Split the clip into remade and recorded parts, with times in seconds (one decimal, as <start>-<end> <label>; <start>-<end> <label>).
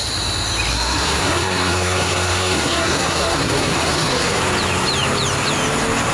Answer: 0.0-0.7 recorded; 0.7-4.4 remade; 4.4-6.1 recorded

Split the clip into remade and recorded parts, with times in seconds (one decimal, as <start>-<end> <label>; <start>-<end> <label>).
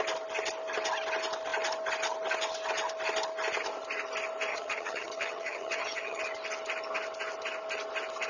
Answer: 0.0-4.5 recorded; 4.5-6.2 remade; 6.2-8.3 recorded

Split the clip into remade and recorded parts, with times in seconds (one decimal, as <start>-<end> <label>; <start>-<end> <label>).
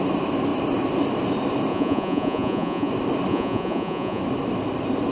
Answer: 0.0-1.7 recorded; 1.7-2.9 remade; 2.9-3.3 recorded; 3.3-4.2 remade; 4.2-5.1 recorded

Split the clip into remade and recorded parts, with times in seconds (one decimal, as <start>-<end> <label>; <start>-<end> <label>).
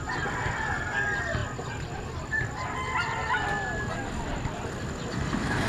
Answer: 0.0-5.7 recorded